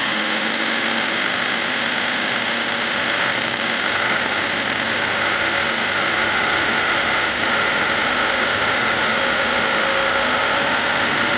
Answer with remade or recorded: remade